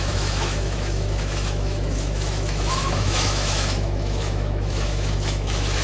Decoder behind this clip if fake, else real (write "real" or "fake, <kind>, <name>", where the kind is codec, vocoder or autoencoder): fake, autoencoder, DAC-VAE